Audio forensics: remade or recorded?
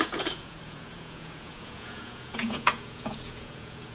remade